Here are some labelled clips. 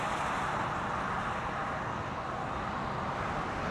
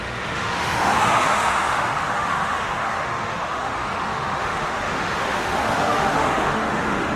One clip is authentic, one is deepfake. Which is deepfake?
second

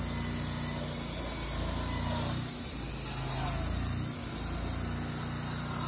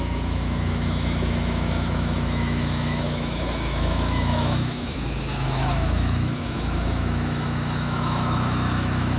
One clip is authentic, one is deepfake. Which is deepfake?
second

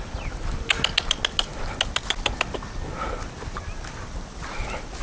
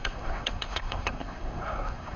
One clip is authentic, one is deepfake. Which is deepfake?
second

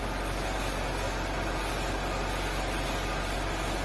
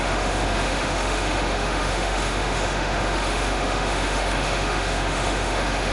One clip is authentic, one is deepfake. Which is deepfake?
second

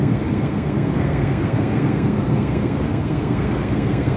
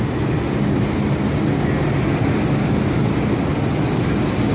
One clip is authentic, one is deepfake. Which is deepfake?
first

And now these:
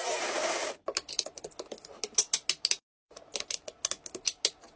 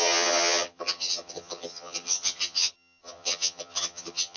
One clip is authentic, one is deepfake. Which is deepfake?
second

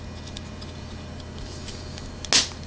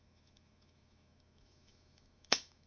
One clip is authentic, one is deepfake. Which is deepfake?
second